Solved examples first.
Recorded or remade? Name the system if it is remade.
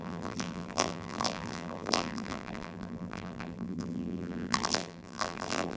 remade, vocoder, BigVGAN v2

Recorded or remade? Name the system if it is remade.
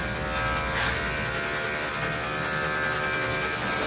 recorded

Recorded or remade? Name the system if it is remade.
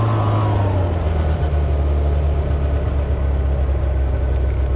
recorded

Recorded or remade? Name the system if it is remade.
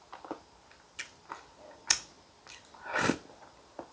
recorded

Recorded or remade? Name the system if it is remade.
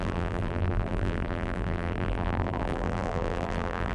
remade, vocoder, BigVGAN v2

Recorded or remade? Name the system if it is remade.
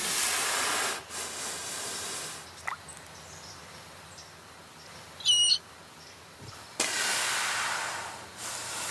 recorded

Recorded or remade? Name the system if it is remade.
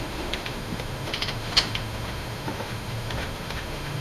remade, autoencoder, DAC-VAE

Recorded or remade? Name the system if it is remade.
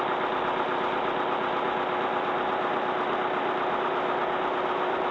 recorded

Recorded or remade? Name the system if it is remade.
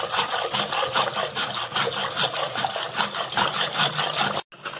recorded